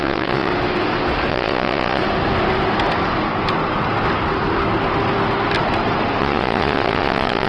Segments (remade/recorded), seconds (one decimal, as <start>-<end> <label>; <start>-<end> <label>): 0.0-0.5 remade; 0.5-1.3 recorded; 1.3-2.0 remade; 2.0-6.2 recorded; 6.2-7.5 remade

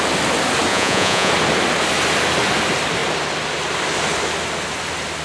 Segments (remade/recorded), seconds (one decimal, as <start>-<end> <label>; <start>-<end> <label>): 0.0-0.7 recorded; 0.7-1.3 remade; 1.3-5.2 recorded

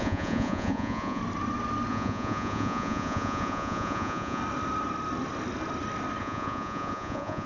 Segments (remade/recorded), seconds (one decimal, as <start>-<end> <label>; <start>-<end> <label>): 0.0-1.2 remade; 1.2-1.9 recorded; 1.9-4.4 remade; 4.4-6.2 recorded; 6.2-7.5 remade

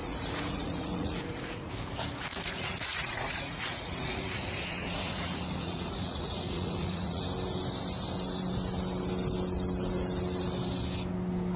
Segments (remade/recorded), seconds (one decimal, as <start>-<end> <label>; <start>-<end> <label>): 0.0-1.7 remade; 1.7-2.3 recorded; 2.3-7.2 remade; 7.2-11.6 recorded

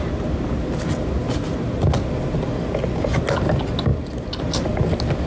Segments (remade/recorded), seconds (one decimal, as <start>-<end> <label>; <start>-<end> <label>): 0.0-5.3 recorded

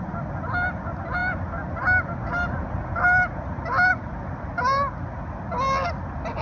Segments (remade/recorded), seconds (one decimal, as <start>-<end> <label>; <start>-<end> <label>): 0.0-6.4 recorded